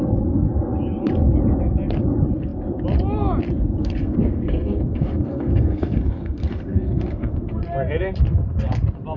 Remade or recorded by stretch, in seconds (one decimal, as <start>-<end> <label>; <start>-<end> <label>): 0.0-3.8 recorded; 3.8-7.6 remade; 7.6-9.2 recorded